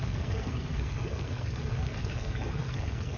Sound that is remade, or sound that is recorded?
remade